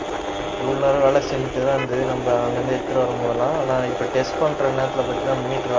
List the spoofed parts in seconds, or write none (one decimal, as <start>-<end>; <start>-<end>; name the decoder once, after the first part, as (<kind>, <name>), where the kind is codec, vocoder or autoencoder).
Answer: none